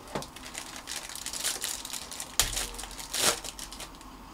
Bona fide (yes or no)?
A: yes